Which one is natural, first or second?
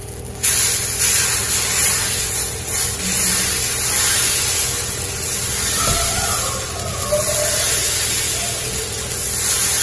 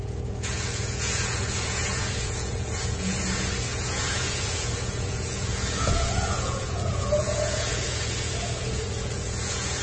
first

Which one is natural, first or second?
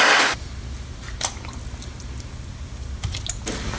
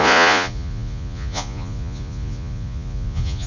first